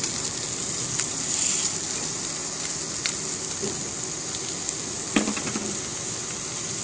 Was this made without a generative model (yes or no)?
yes